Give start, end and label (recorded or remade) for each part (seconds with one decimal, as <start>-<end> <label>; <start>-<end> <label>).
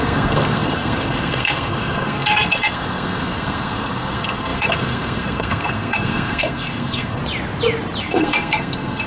0.0-7.2 remade; 7.2-8.0 recorded; 8.0-9.1 remade